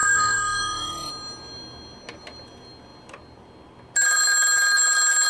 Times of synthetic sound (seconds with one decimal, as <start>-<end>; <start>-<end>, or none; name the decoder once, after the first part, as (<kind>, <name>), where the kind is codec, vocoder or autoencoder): 0.0-1.1 (autoencoder, DAC-VAE)